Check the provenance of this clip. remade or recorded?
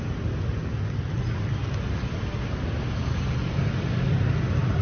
recorded